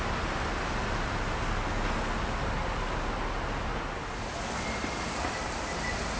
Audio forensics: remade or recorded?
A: recorded